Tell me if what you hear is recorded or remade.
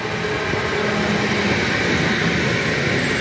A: recorded